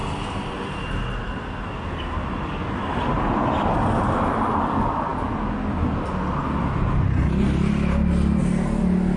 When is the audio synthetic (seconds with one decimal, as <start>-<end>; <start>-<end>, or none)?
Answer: none